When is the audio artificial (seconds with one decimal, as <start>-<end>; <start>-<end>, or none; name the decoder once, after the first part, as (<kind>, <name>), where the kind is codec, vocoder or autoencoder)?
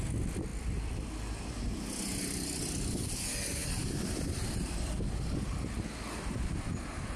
0.5-1.6 (vocoder, BigVGAN v2); 3.6-4.7